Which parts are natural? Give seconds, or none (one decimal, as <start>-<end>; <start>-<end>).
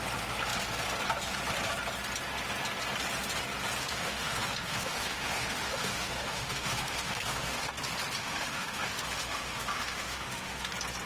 0.0-3.8; 7.7-8.2; 10.7-11.1